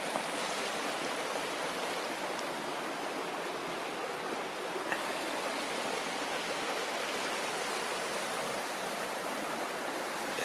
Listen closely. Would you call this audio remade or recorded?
recorded